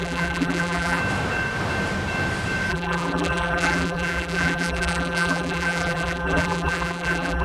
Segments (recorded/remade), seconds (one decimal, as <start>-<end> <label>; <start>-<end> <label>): 0.0-1.0 remade; 1.0-2.7 recorded; 2.7-7.4 remade

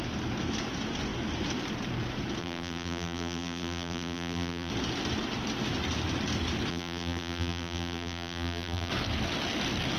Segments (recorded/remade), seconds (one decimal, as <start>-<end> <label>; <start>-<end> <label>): 0.0-2.4 recorded; 2.4-4.7 remade; 4.7-6.7 recorded; 6.7-8.9 remade; 8.9-10.0 recorded

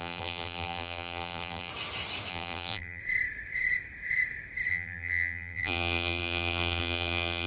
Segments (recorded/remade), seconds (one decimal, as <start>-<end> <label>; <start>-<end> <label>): 0.0-1.7 remade; 1.7-2.3 recorded; 2.3-3.0 remade; 3.0-4.7 recorded; 4.7-7.5 remade